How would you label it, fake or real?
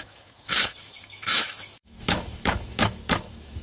fake